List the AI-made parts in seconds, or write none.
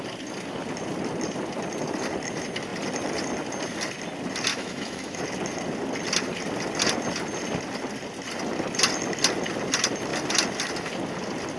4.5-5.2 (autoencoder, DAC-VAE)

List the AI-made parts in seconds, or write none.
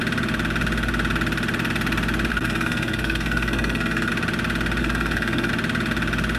2.3-4.1 (codec, SNAC); 4.8-5.5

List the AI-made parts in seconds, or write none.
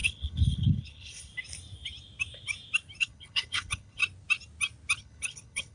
0.0-1.3 (codec, HILCodec); 3.0-4.0; 5.0-5.7